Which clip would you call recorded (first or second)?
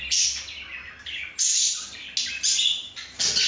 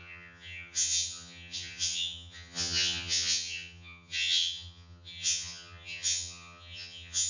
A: first